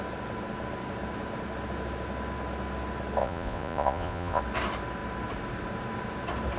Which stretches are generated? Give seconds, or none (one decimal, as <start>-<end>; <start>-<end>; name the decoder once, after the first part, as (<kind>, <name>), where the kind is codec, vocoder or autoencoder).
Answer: 3.2-4.4 (vocoder, Vocos)